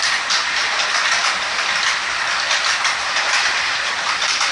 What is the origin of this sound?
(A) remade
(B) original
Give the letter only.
B